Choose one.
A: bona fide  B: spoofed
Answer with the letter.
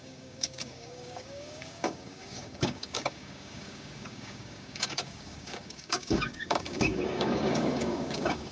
B